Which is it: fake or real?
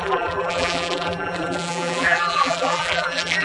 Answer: fake